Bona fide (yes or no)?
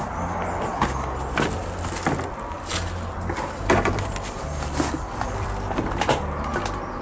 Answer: yes